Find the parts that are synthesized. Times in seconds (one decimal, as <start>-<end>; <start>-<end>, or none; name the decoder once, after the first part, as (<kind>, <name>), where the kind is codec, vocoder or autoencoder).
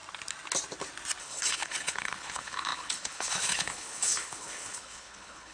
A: 1.2-5.5 (codec, HILCodec)